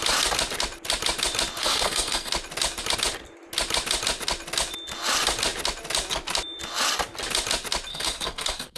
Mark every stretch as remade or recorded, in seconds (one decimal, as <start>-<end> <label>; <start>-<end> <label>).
0.0-1.6 recorded; 1.6-2.3 remade; 2.3-7.9 recorded; 7.9-8.8 remade